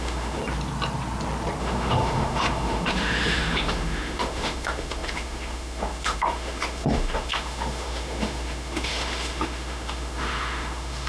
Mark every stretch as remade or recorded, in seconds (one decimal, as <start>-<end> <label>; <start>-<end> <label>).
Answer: 0.0-0.4 remade; 0.4-1.6 recorded; 1.6-11.1 remade